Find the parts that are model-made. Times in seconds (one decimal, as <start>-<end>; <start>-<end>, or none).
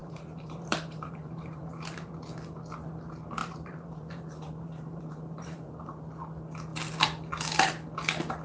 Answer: 0.0-2.1; 3.4-6.0